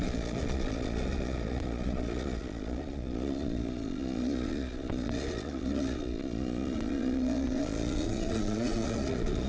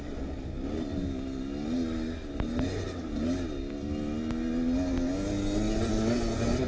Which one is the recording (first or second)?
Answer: second